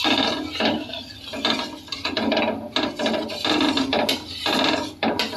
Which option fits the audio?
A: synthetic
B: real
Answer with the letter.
B